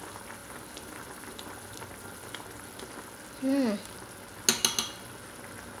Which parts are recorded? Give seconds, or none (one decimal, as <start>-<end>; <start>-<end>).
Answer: 0.0-0.4; 2.9-5.8